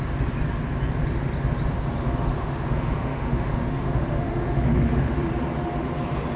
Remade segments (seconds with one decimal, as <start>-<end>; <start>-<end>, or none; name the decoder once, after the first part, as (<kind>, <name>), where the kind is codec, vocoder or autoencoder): 2.3-5.3 (autoencoder, DAC-VAE)